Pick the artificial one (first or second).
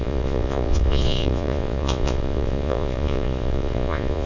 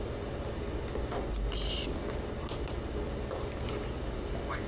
first